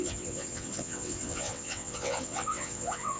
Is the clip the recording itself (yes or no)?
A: no